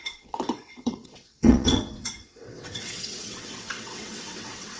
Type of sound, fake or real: fake